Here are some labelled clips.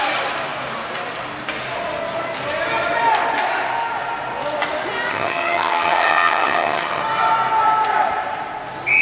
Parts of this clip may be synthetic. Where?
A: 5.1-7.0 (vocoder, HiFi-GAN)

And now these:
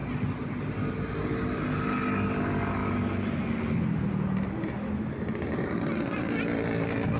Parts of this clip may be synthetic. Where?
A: none

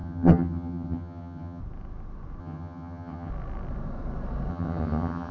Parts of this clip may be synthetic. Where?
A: 0.0-1.6 (vocoder, HiFi-GAN); 2.4-3.3; 4.5-5.3

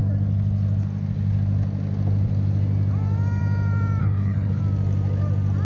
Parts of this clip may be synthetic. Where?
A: 4.0-4.6 (codec, HILCodec)